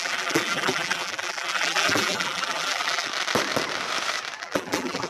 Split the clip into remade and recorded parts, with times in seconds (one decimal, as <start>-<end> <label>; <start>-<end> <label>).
0.0-3.1 remade; 3.1-4.4 recorded; 4.4-5.1 remade